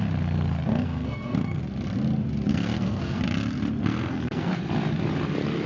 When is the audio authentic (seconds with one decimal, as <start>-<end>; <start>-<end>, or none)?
0.0-0.7; 1.6-2.5; 3.2-3.8; 4.6-5.7